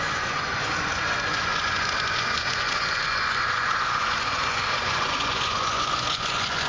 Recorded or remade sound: remade